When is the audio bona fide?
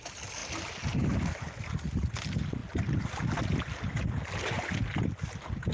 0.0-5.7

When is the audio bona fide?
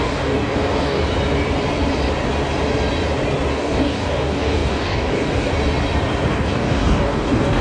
1.0-3.5; 5.5-6.3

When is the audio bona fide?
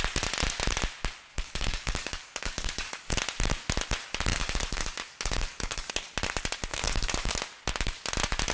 0.0-1.3; 3.1-4.3; 5.9-6.7; 7.3-8.5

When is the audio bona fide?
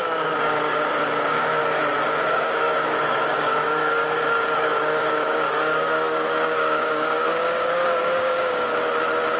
1.6-2.2; 8.7-9.4